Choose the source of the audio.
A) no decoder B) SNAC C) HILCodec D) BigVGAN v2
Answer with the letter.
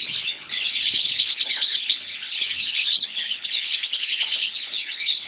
C